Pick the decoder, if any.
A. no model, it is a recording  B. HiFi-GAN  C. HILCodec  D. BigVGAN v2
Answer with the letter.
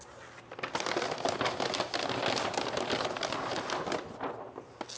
A